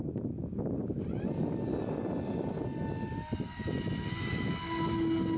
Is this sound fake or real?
real